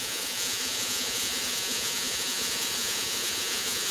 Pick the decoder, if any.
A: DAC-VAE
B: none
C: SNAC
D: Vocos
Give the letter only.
D